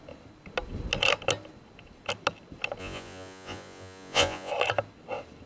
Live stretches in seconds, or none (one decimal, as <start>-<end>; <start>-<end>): 0.0-2.8; 4.5-5.5